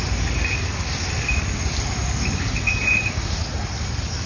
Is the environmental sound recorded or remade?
recorded